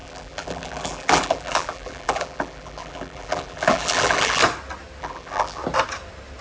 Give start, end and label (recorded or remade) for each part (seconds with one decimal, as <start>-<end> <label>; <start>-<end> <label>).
0.0-4.4 remade; 4.4-5.0 recorded; 5.0-5.6 remade; 5.6-6.4 recorded